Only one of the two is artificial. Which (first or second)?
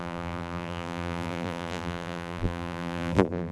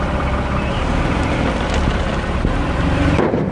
first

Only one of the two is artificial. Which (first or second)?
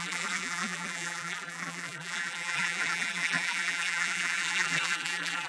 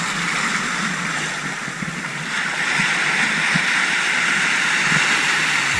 first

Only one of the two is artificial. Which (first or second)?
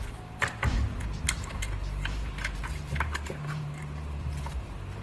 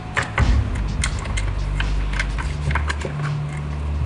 first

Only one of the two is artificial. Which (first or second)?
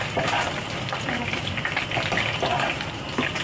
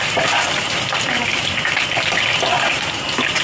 second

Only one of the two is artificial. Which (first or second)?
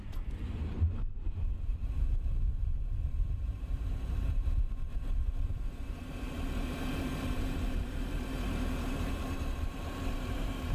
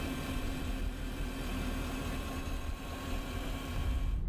first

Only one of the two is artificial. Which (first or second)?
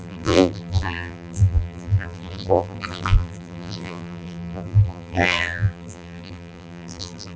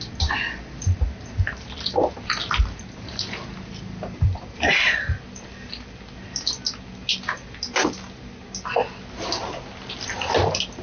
first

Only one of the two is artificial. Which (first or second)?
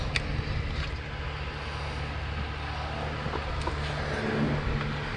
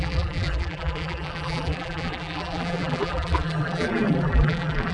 second